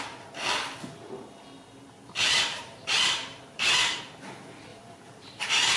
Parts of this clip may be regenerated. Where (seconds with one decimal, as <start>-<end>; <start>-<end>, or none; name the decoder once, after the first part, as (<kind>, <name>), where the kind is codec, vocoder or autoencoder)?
2.2-4.0 (vocoder, BigVGAN v2); 4.7-5.8